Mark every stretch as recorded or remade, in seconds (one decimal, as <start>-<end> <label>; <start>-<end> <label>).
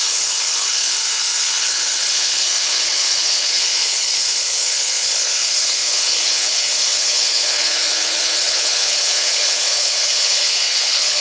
0.0-11.2 remade